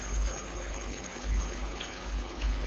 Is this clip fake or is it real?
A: fake